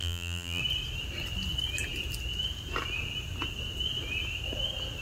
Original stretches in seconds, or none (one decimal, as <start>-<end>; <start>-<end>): 0.6-5.0